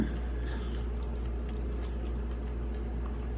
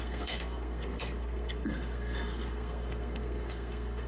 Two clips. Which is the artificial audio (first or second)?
second